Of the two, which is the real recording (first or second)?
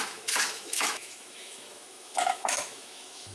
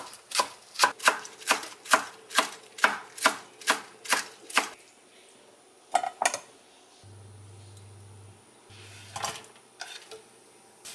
second